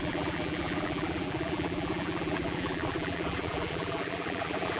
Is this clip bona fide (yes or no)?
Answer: no